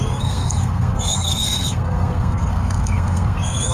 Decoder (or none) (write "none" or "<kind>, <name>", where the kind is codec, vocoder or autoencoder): codec, SNAC